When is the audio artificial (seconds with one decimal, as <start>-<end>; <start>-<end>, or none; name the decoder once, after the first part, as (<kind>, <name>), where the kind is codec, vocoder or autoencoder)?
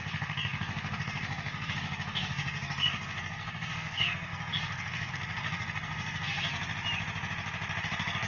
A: 0.0-6.5 (codec, SNAC); 7.8-8.3